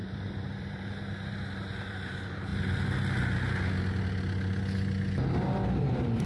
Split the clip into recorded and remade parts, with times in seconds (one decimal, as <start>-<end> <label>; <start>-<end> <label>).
0.0-2.5 remade; 2.5-5.8 recorded; 5.8-6.3 remade